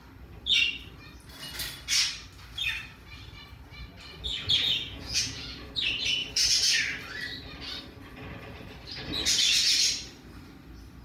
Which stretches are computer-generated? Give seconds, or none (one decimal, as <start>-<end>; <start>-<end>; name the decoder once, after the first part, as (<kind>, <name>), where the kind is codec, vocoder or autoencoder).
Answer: 4.3-5.7 (vocoder, Vocos)